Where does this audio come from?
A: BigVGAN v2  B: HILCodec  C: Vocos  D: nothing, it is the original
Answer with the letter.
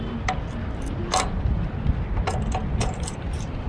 D